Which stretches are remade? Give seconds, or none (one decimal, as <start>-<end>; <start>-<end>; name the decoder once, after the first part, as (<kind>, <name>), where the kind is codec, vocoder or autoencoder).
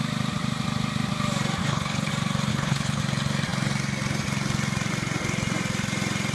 1.6-2.1 (codec, HILCodec); 2.5-3.0